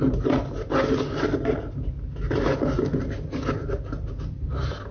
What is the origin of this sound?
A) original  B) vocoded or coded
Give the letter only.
A